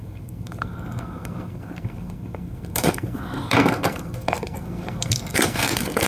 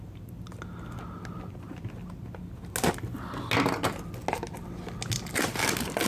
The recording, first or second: second